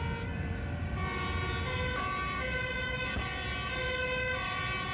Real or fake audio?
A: real